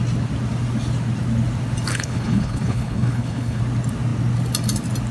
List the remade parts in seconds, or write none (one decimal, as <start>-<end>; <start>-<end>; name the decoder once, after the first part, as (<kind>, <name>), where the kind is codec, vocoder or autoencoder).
1.9-3.6 (codec, HILCodec)